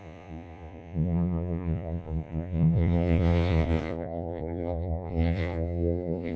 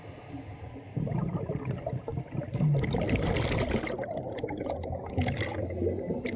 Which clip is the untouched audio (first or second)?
second